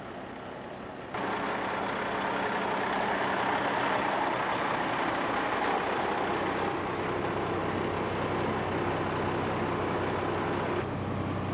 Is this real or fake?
real